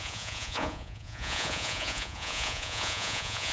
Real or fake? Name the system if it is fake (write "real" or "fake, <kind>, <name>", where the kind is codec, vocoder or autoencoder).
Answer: fake, vocoder, Vocos